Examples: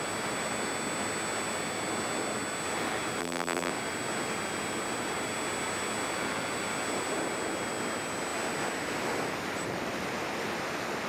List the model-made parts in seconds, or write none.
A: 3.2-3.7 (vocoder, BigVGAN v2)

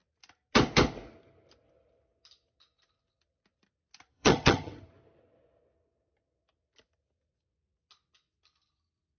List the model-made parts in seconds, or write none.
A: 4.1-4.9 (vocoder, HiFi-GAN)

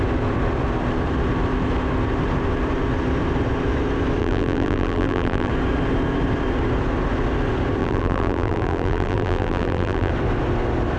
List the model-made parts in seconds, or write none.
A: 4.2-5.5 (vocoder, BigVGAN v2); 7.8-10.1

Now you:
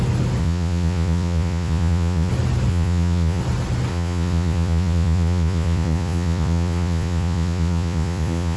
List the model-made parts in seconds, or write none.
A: 0.4-2.3 (vocoder, Vocos); 2.7-3.4; 3.9-8.6

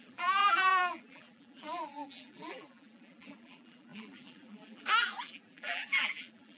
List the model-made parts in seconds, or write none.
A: 0.0-6.6 (vocoder, BigVGAN v2)

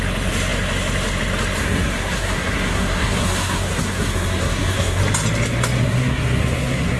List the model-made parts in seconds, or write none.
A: 1.6-5.0 (codec, SNAC); 5.8-7.0

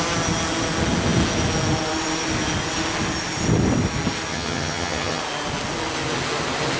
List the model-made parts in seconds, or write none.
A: 4.3-5.2 (vocoder, HiFi-GAN)